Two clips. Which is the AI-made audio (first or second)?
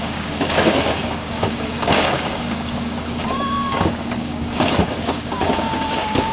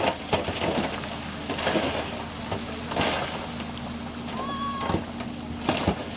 first